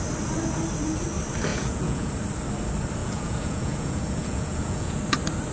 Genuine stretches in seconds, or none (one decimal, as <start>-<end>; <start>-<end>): 0.0-1.5; 2.1-3.0; 5.0-5.5